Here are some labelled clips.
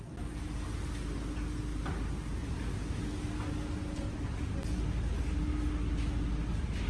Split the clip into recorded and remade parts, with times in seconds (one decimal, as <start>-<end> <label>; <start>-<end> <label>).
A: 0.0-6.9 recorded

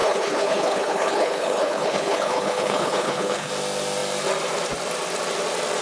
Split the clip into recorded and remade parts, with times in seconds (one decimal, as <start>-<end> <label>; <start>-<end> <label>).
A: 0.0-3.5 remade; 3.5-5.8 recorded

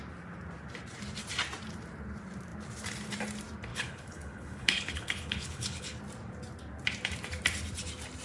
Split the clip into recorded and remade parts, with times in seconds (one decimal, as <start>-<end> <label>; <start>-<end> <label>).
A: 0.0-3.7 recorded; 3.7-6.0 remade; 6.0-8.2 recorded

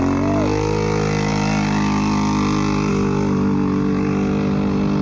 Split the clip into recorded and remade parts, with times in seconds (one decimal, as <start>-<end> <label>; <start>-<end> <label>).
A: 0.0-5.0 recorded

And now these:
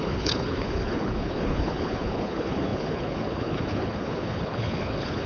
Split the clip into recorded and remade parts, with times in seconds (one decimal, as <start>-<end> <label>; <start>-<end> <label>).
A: 0.0-5.3 remade